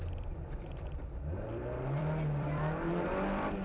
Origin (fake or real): fake